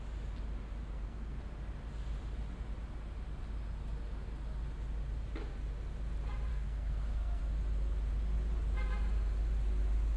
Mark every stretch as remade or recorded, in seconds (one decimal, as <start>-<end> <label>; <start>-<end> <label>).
0.0-0.8 recorded; 0.8-1.4 remade; 1.4-6.5 recorded; 6.5-7.4 remade; 7.4-10.2 recorded